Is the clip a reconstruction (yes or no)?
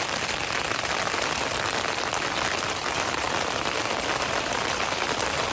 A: yes